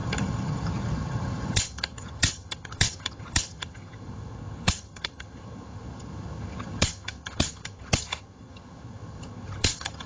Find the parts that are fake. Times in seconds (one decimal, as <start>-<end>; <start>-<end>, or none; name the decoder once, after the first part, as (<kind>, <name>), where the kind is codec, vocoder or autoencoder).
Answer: 0.0-10.1 (vocoder, HiFi-GAN)